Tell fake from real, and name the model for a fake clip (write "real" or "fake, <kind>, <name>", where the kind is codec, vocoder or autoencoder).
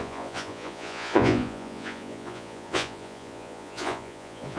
fake, vocoder, Vocos